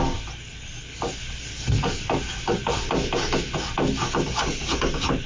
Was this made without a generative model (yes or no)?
yes